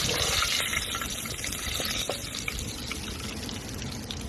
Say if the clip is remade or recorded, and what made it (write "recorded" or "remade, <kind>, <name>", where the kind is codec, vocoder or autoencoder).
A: recorded